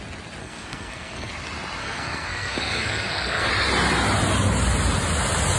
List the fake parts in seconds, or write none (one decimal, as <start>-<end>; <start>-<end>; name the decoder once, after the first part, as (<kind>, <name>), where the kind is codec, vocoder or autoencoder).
0.4-1.3 (codec, SNAC); 1.8-3.5